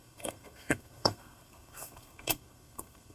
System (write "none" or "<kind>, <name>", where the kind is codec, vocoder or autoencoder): codec, SNAC